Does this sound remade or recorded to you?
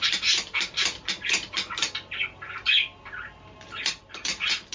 recorded